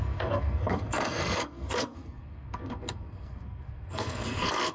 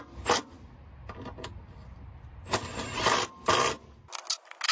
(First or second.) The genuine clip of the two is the second